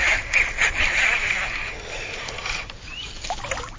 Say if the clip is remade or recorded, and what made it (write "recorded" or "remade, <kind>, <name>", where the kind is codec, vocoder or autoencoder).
recorded